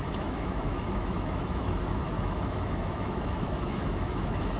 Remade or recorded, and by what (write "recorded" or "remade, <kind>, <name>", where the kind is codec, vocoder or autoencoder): remade, autoencoder, DAC-VAE